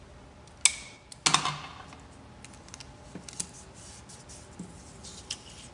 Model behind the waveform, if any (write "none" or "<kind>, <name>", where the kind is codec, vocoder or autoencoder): none